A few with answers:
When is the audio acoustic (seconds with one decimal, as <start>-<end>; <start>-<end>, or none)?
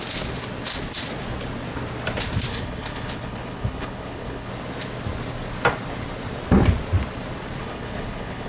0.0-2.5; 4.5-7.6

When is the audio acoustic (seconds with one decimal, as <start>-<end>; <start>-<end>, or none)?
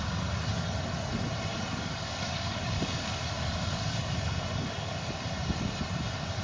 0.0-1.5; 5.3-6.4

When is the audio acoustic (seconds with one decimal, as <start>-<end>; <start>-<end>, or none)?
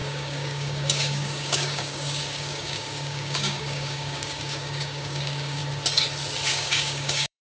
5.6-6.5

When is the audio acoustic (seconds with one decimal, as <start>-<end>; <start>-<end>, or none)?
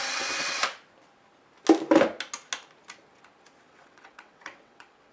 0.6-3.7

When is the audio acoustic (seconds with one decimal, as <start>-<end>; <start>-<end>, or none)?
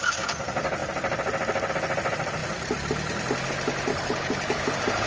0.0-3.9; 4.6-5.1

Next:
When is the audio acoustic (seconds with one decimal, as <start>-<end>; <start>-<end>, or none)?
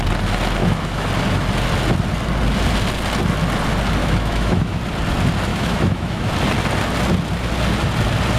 0.0-0.6; 1.1-4.0; 4.8-5.5; 6.3-8.4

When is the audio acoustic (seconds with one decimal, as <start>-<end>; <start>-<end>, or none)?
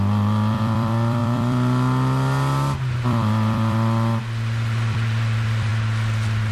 5.7-6.5